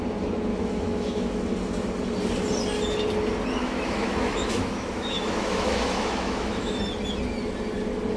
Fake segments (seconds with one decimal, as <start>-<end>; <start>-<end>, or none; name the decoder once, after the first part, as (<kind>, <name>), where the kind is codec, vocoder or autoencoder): 0.5-1.4 (autoencoder, DAC-VAE); 3.6-6.8